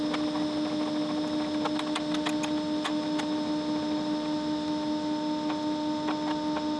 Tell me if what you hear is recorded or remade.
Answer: recorded